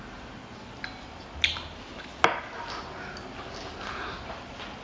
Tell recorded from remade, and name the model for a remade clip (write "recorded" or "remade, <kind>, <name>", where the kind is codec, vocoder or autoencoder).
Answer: recorded